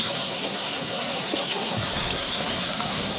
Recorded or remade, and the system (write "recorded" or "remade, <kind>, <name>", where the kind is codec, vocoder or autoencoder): remade, codec, SNAC